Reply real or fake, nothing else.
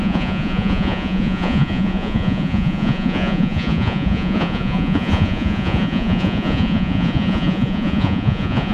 fake